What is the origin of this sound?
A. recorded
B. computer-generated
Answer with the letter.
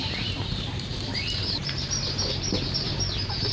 B